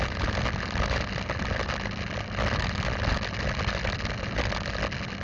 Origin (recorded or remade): recorded